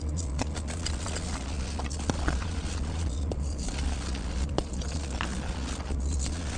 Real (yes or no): no